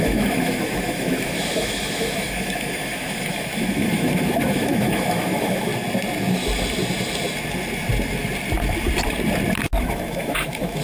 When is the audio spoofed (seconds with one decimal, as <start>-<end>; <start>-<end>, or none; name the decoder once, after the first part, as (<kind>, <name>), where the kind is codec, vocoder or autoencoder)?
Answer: 0.0-5.7 (autoencoder, DAC-VAE); 9.8-10.8